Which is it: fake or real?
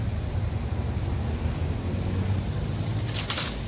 real